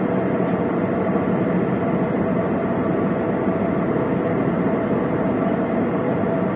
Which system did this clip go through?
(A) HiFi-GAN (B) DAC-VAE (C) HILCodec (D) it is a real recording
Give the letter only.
D